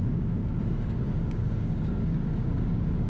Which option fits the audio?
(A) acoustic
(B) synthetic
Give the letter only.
B